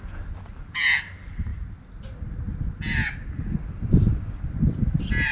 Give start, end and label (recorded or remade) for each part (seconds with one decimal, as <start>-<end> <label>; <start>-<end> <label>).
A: 0.0-5.3 recorded